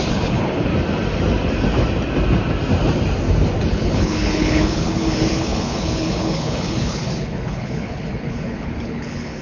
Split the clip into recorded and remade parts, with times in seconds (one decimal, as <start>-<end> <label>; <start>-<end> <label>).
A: 0.0-0.7 remade; 0.7-3.7 recorded; 3.7-9.4 remade